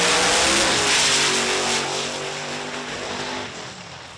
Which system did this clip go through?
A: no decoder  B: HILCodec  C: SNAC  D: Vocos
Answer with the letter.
A